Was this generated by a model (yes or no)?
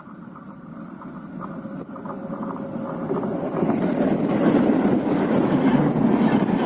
yes